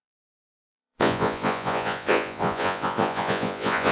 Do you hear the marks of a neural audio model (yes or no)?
yes